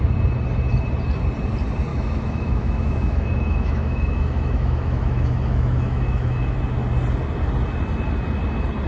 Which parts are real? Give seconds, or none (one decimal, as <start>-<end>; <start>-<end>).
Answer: 0.0-1.9; 6.6-8.9